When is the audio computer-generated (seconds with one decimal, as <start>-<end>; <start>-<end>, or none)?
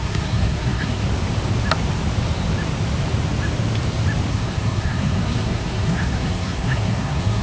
0.0-1.0; 4.3-7.4